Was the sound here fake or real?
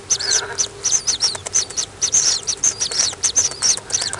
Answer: real